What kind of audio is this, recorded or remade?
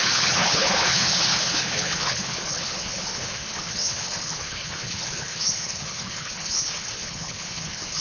remade